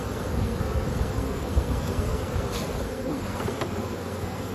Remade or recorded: remade